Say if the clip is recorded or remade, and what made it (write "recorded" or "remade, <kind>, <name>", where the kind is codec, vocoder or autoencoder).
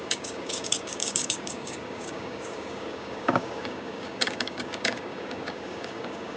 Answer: remade, codec, DAC